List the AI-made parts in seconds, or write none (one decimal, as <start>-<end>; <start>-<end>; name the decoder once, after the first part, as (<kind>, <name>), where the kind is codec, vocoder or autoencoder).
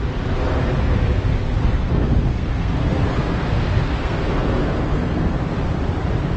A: 1.6-5.4 (codec, SNAC)